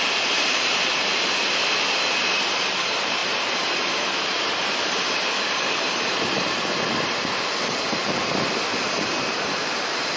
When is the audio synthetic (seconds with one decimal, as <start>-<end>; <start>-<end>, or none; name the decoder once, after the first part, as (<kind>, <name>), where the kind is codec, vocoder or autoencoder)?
0.0-8.7 (vocoder, BigVGAN v2); 9.2-10.2